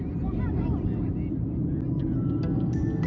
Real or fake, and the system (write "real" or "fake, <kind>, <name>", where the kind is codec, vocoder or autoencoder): real